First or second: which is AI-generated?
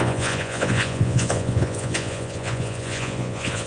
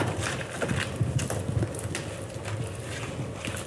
first